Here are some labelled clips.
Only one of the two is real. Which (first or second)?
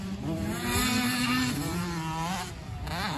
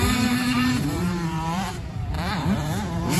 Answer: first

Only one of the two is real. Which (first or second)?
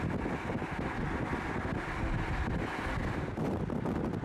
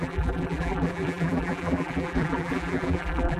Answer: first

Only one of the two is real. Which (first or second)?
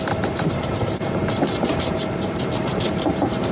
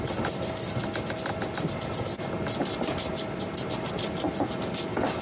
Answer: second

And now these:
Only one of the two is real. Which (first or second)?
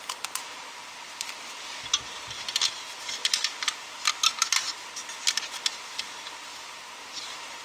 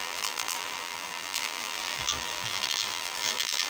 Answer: first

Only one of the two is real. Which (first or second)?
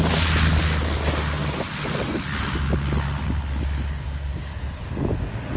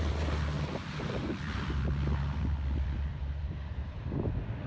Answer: first